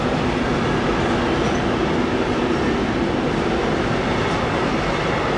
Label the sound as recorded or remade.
recorded